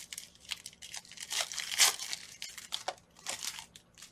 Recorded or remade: recorded